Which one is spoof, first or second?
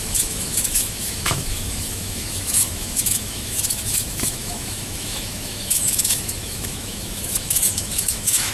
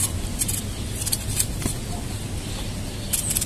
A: first